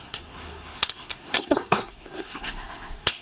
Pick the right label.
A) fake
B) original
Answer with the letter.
A